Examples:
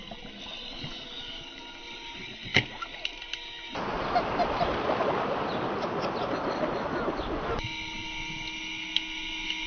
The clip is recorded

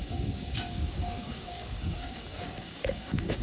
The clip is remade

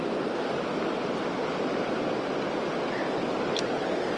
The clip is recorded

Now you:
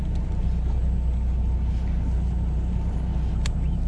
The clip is recorded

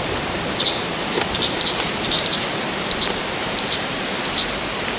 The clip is remade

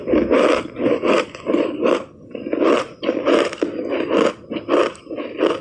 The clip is recorded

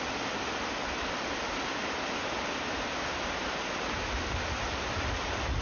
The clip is recorded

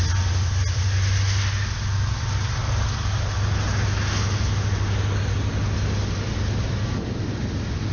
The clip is recorded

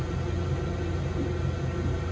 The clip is recorded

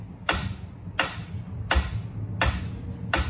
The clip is recorded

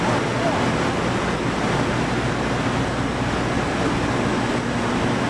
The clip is recorded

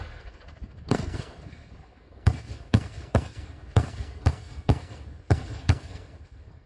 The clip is remade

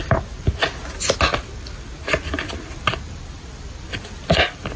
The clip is recorded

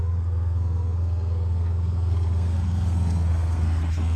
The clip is remade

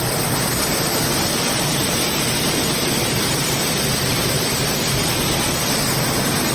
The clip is remade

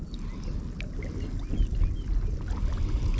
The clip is recorded